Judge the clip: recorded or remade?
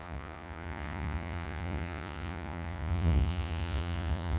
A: remade